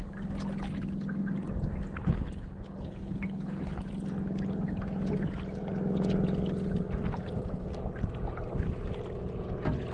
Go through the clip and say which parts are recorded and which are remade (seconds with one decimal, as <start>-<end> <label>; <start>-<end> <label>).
0.0-2.0 recorded; 2.0-3.9 remade; 3.9-9.9 recorded